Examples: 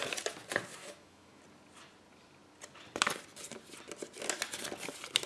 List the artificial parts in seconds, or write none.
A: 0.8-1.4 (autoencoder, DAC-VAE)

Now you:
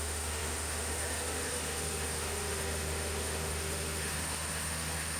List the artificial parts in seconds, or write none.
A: 0.0-5.2 (autoencoder, DAC-VAE)

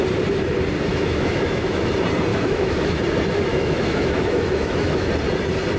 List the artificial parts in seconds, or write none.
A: 0.9-1.9 (autoencoder, DAC-VAE); 2.3-3.0; 3.5-5.1

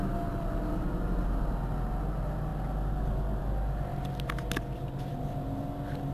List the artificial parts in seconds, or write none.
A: none

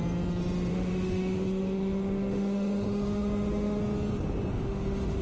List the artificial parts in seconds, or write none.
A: 0.7-3.8 (autoencoder, DAC-VAE); 4.5-5.2

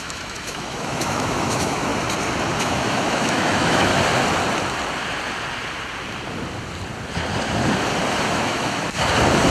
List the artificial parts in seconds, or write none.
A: 0.0-1.9 (autoencoder, DAC-VAE); 2.6-3.9; 8.3-8.8

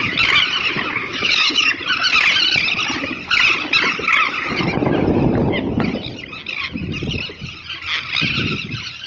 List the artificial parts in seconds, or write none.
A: 1.0-1.7 (autoencoder, DAC-VAE)